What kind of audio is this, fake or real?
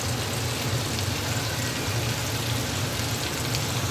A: real